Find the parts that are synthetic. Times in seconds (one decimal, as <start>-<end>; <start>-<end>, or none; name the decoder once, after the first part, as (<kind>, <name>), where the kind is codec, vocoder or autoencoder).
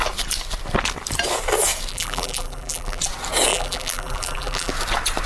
1.9-3.0 (vocoder, BigVGAN v2); 3.5-4.7